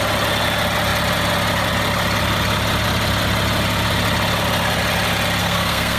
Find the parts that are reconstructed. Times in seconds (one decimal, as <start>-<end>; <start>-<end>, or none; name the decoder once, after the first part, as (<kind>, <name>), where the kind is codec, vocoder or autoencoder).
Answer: 5.4-6.0 (codec, SNAC)